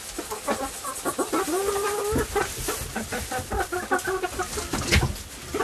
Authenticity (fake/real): real